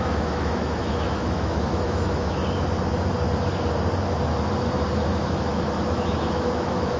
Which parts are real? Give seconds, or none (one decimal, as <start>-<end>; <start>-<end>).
2.4-5.0